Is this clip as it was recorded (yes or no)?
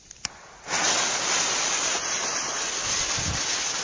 yes